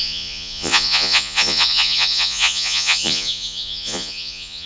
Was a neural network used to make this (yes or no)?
yes